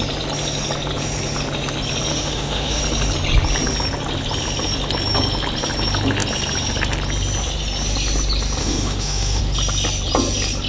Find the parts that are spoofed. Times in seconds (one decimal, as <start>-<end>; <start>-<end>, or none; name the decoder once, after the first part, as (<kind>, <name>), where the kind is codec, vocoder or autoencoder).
2.1-2.8 (autoencoder, DAC-VAE); 8.6-9.4